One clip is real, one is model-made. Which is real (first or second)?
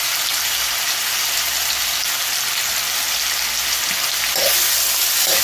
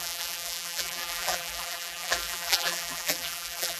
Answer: first